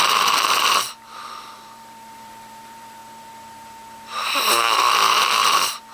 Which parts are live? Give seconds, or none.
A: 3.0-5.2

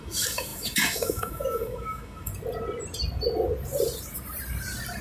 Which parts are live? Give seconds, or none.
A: 2.3-5.0